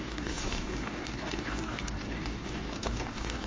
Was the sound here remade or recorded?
remade